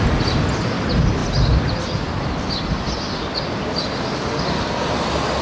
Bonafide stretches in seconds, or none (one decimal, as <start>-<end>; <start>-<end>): 0.0-5.4